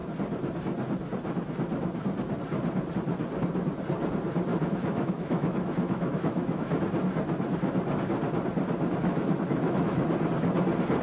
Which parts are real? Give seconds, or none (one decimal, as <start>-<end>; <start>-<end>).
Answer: 0.0-4.5; 6.8-9.0; 10.1-11.0